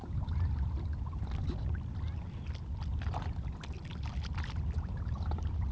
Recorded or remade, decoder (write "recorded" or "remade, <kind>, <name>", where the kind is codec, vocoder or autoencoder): recorded